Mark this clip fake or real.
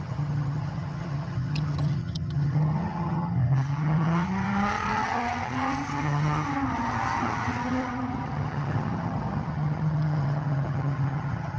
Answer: fake